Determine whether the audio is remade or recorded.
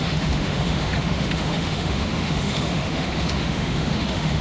remade